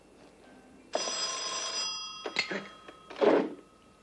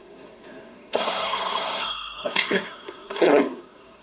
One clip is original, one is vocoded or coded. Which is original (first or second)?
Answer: first